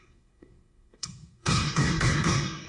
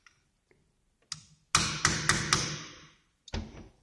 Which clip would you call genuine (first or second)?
second